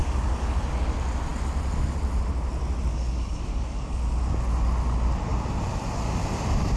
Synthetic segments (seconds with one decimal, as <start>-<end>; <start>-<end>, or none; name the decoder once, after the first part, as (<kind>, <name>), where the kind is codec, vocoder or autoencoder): 0.0-0.6 (codec, DAC); 2.9-4.0